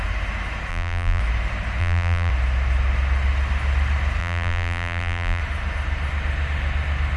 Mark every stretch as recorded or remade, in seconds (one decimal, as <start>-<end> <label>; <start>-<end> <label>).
0.0-0.7 recorded; 0.7-1.2 remade; 1.2-1.8 recorded; 1.8-2.3 remade; 2.3-4.2 recorded; 4.2-5.4 remade; 5.4-7.2 recorded